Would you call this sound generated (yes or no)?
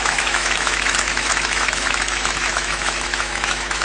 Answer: yes